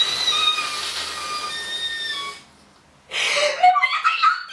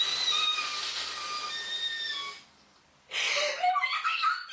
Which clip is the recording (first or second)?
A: first